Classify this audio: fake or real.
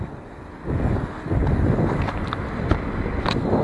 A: real